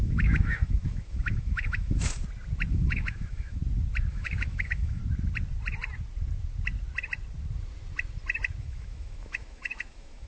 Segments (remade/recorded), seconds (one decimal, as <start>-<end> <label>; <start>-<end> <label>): 0.0-2.2 remade; 2.2-2.7 recorded; 2.7-3.6 remade; 3.6-4.1 recorded; 4.1-5.0 remade; 5.0-8.6 recorded; 8.6-10.3 remade